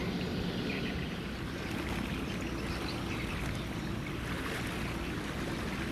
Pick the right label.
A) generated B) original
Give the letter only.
B